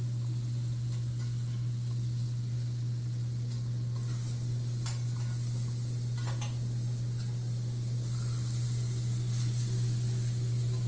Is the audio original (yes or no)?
yes